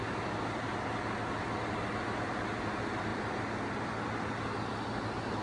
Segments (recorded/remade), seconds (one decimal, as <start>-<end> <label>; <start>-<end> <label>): 0.0-3.1 recorded; 3.1-3.8 remade; 3.8-5.4 recorded